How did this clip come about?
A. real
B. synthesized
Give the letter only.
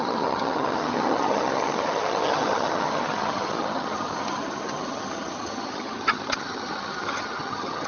B